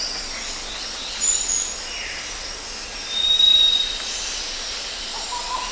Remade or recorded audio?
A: recorded